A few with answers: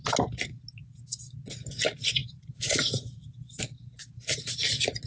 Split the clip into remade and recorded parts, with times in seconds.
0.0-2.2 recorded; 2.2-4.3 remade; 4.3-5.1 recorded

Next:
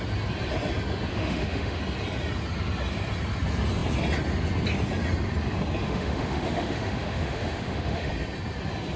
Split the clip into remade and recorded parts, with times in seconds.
0.0-1.1 recorded; 1.1-1.8 remade; 1.8-5.8 recorded; 5.8-8.1 remade; 8.1-9.0 recorded

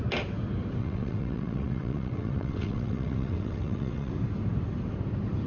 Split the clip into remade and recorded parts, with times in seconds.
0.0-0.8 recorded; 0.8-4.1 remade; 4.1-5.5 recorded

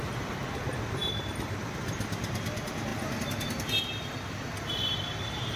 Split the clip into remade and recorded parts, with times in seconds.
0.0-5.6 recorded